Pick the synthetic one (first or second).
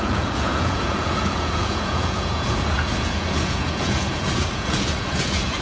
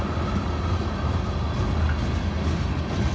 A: first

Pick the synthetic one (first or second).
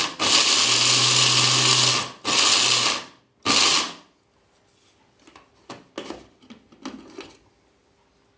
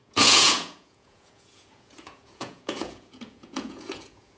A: second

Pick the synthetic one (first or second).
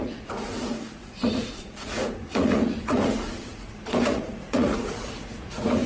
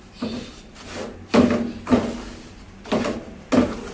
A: first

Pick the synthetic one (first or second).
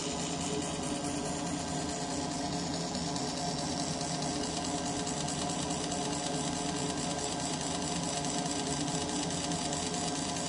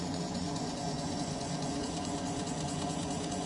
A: second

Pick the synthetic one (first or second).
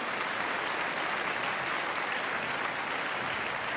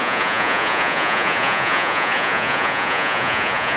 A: second